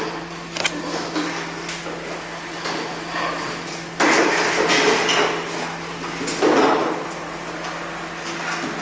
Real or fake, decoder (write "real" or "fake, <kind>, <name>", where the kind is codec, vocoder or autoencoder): real